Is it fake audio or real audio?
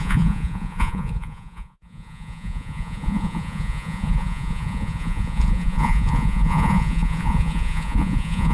fake